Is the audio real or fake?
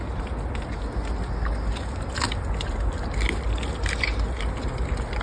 real